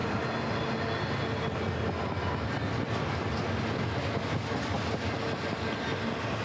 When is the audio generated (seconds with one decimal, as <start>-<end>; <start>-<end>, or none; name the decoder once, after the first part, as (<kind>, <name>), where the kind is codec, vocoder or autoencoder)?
none